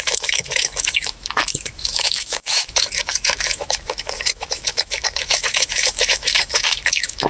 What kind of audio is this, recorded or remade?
remade